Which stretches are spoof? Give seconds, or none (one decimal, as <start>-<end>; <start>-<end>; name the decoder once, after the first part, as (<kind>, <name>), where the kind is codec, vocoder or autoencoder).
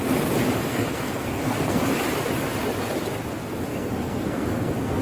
0.6-1.8 (codec, SNAC); 3.7-5.0